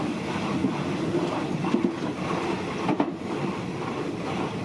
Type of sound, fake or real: real